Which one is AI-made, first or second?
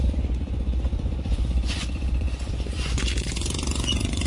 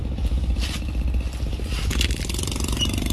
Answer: first